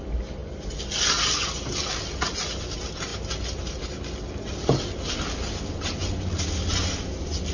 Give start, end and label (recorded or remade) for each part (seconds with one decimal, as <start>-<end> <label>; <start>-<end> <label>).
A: 0.0-7.5 recorded